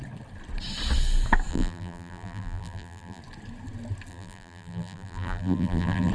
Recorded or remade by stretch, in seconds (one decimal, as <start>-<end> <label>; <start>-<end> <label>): 0.0-1.5 recorded; 1.5-3.2 remade; 3.2-4.1 recorded; 4.1-6.1 remade